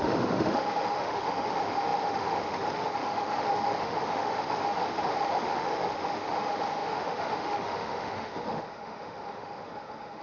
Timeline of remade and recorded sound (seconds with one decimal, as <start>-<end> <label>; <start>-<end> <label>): 0.0-10.2 remade